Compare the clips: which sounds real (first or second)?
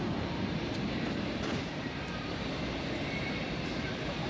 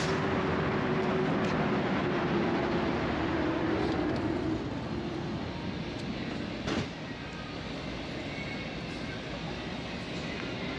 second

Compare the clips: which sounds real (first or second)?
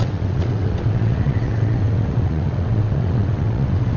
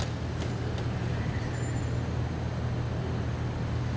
second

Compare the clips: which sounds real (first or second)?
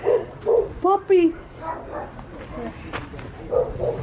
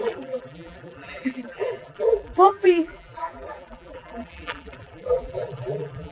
first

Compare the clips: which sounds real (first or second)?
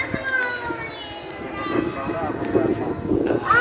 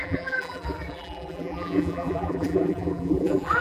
first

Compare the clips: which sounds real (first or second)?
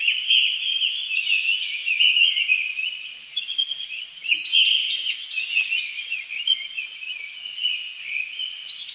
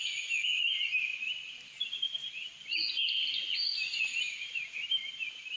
second